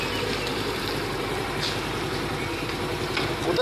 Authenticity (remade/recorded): recorded